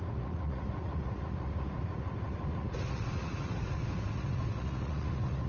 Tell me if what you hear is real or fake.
fake